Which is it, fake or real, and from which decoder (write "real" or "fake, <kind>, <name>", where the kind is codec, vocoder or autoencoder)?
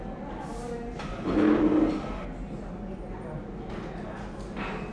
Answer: real